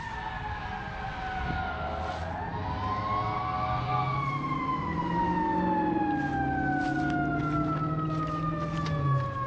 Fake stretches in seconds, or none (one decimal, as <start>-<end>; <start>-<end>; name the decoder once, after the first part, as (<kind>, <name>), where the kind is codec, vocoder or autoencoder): none